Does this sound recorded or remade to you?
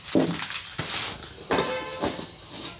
recorded